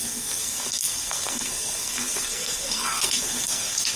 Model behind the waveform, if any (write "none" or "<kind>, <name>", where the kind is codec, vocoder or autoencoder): codec, SNAC